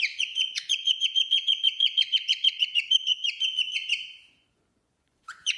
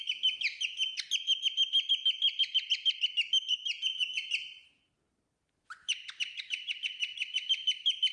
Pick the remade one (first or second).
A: first